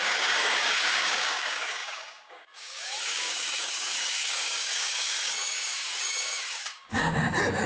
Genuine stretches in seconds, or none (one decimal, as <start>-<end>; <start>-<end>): none